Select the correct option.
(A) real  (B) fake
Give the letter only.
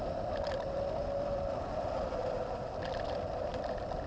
B